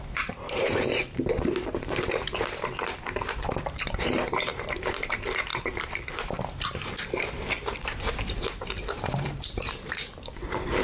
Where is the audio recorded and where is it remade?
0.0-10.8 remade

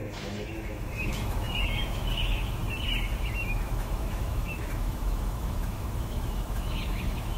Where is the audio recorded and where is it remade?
0.0-2.6 remade; 2.6-3.2 recorded; 3.2-7.4 remade

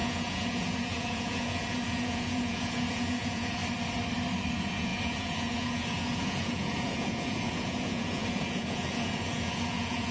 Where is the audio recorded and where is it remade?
0.0-3.6 remade; 3.6-4.5 recorded; 4.5-10.1 remade